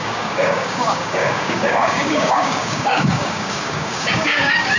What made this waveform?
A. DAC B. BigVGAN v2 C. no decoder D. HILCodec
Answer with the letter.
A